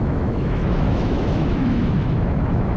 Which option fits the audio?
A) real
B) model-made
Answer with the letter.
B